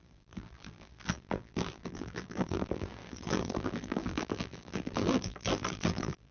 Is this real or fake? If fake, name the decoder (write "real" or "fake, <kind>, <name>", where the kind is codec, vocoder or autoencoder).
fake, vocoder, BigVGAN v2